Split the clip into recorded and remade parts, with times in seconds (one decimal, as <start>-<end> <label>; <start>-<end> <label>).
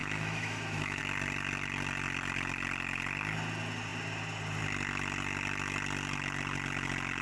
0.0-1.0 remade; 1.0-7.2 recorded